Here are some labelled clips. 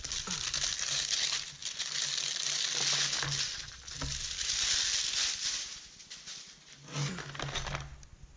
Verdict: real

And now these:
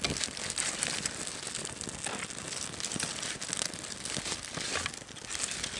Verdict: real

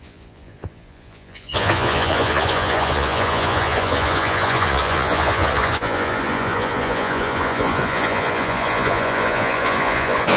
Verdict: fake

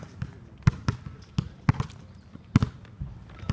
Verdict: real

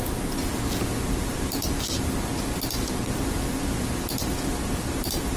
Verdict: real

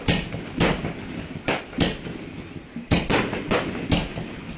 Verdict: real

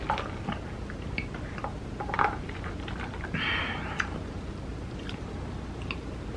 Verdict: real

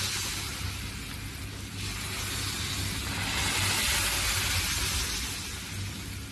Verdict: real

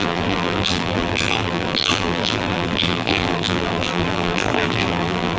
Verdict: fake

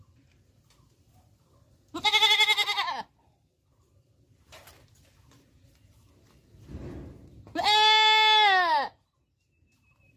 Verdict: real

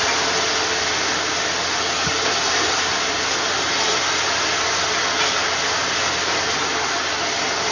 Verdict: real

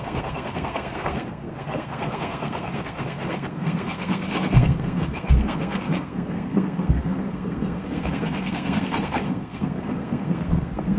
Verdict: fake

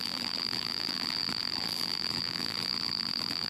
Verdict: fake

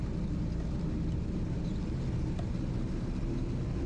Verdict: real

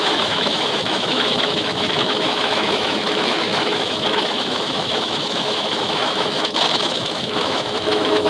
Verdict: fake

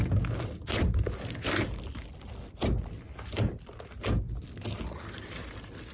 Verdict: real